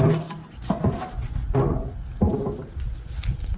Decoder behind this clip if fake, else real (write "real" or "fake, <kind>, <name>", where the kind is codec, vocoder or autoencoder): real